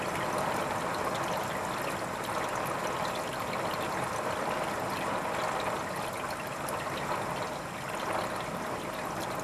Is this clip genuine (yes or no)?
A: yes